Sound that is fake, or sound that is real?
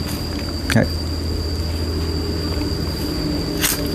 real